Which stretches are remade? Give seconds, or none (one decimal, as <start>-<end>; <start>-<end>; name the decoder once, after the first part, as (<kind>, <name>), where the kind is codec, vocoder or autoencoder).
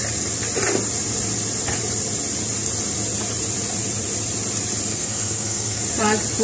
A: 4.9-5.8 (codec, SNAC)